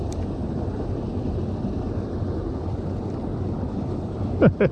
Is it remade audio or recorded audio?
recorded